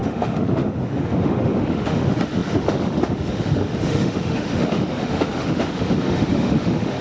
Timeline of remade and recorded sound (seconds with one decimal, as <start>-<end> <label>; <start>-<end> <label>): 0.0-7.0 remade